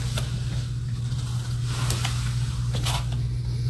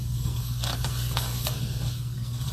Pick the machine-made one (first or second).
second